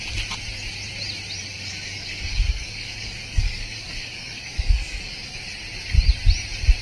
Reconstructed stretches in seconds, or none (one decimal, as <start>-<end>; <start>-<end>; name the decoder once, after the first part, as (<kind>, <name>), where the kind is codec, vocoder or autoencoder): 1.5-5.4 (codec, DAC)